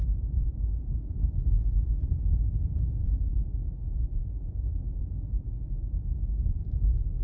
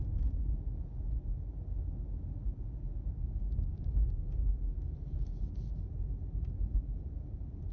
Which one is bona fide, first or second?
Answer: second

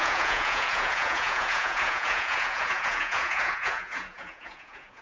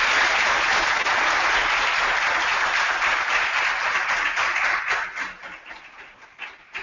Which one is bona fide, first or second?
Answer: second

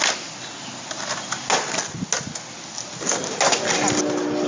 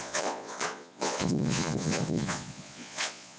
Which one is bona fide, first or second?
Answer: first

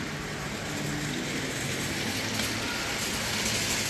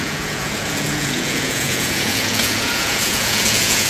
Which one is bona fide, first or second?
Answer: first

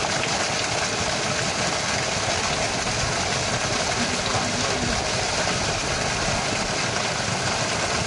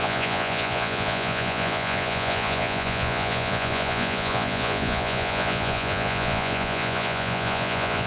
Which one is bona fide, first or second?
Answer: first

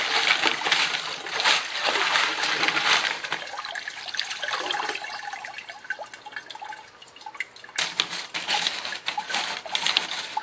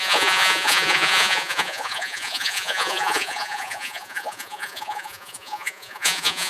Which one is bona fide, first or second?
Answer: first